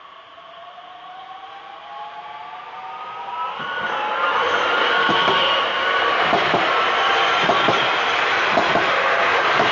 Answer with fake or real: real